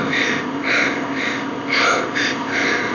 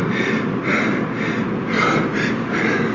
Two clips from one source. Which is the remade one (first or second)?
first